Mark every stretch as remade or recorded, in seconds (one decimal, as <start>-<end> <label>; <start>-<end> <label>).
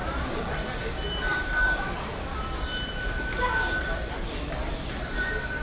0.0-5.6 remade